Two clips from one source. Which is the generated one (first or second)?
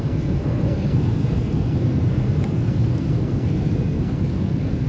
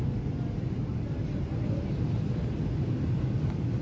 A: first